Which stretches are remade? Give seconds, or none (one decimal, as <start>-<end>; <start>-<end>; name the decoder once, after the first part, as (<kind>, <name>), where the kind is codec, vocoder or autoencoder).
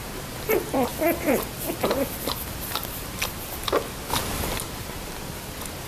4.1-4.6 (vocoder, BigVGAN v2)